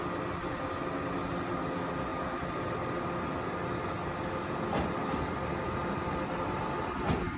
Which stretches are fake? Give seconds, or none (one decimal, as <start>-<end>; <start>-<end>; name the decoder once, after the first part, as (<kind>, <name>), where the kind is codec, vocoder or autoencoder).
none